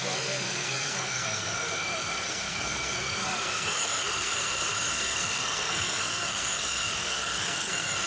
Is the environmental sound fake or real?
fake